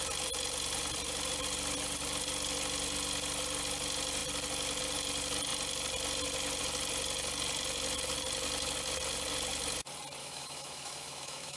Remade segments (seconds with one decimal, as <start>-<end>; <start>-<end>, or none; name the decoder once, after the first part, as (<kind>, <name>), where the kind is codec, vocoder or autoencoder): 10.2-11.6 (autoencoder, DAC-VAE)